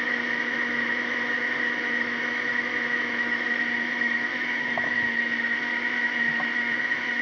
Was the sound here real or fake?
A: fake